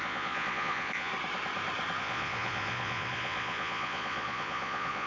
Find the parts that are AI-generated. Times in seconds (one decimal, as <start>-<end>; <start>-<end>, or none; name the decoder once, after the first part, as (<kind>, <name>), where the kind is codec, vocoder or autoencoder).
0.0-1.1 (vocoder, Vocos); 2.0-5.1